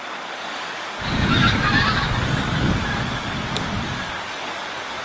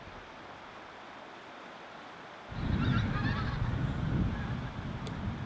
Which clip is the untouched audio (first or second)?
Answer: second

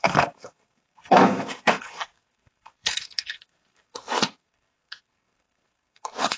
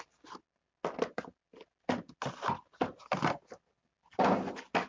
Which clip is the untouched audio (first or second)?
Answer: second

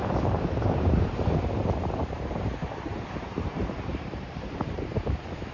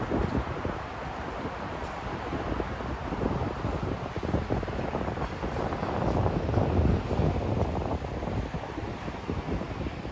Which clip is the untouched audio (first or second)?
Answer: second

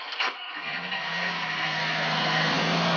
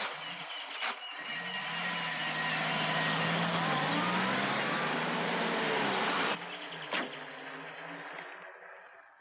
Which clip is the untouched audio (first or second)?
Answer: second